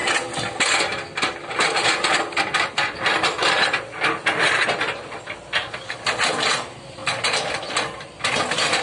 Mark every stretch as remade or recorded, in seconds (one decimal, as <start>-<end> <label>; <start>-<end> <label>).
0.0-8.8 recorded